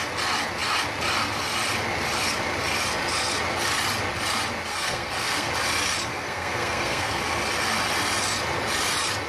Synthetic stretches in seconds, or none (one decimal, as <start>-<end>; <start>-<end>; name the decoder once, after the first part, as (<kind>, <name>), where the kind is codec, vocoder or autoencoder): 4.7-5.5 (codec, SNAC); 6.1-7.2